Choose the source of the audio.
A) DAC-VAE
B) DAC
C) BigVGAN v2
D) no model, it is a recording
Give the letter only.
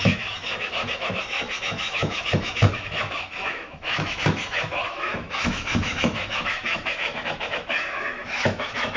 A